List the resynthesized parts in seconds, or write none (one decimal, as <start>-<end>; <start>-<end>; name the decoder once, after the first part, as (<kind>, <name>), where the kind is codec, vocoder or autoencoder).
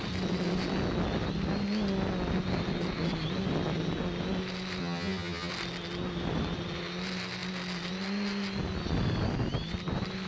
4.8-5.5 (vocoder, HiFi-GAN)